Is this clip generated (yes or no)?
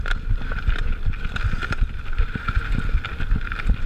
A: no